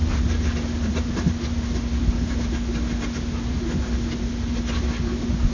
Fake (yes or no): no